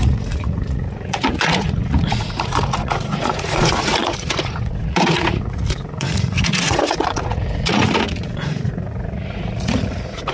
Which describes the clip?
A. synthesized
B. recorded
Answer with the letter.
A